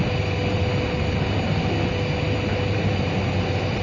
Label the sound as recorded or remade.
recorded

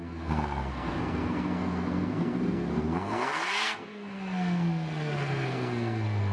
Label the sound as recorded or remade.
remade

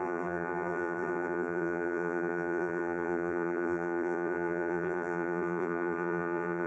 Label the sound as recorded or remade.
remade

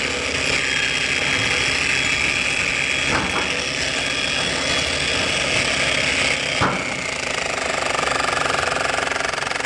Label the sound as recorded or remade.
recorded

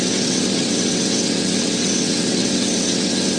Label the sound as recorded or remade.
remade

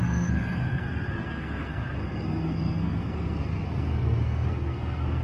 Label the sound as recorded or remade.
remade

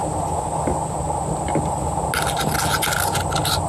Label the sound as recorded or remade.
recorded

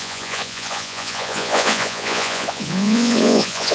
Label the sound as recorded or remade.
remade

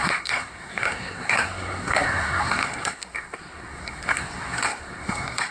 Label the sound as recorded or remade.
remade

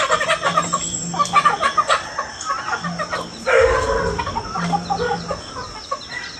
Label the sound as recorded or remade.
recorded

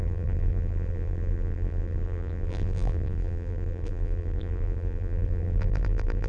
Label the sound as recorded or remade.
remade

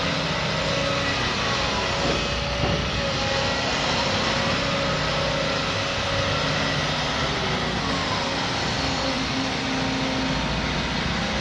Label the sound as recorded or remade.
recorded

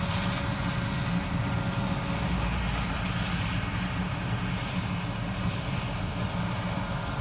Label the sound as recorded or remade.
recorded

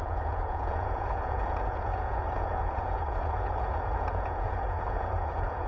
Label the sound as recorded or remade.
remade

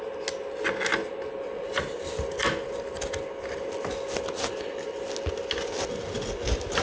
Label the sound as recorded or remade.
recorded